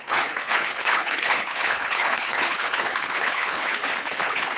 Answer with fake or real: fake